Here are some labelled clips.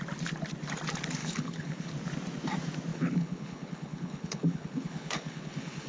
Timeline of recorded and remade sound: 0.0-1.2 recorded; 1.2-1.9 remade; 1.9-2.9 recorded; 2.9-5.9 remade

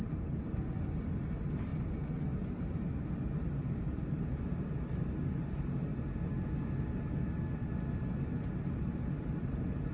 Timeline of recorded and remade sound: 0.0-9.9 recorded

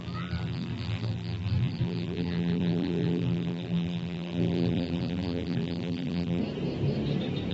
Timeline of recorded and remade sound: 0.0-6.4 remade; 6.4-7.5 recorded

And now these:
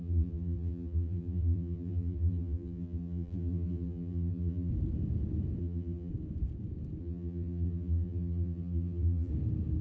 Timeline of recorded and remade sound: 0.0-4.7 remade; 4.7-5.6 recorded; 5.6-6.1 remade; 6.1-7.0 recorded; 7.0-9.3 remade; 9.3-9.8 recorded